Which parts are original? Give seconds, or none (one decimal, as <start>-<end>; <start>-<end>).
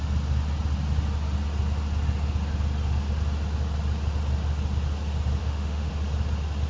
0.0-5.4; 5.9-6.7